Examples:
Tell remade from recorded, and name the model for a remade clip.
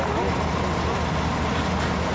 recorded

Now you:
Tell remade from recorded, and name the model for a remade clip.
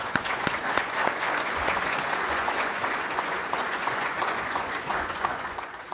remade, vocoder, Vocos